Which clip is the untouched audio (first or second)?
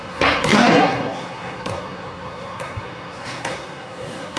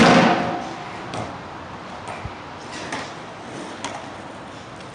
second